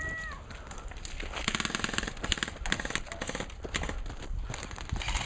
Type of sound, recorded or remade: recorded